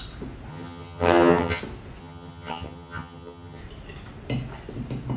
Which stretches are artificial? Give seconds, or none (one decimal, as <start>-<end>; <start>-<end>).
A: 0.5-1.6; 2.0-3.6